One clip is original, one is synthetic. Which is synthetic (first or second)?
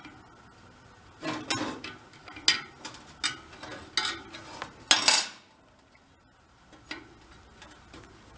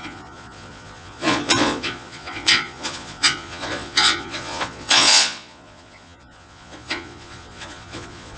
second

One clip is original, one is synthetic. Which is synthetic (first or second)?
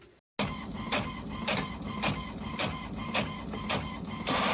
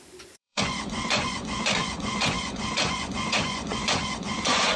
second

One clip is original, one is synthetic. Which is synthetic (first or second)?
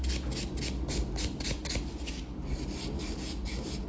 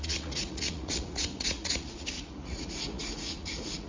second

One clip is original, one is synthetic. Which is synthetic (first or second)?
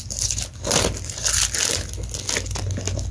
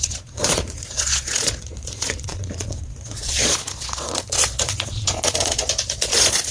second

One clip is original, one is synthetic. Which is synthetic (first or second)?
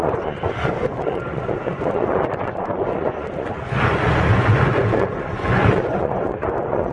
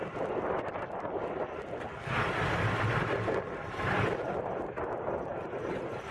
first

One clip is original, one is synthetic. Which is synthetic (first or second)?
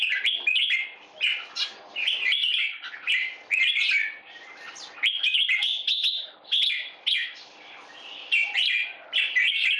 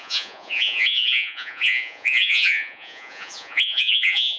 second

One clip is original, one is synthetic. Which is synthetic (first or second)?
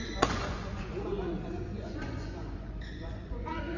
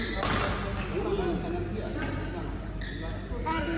first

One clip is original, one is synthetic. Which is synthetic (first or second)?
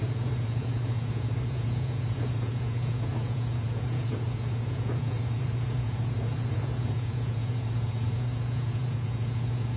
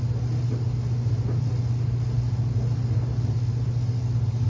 first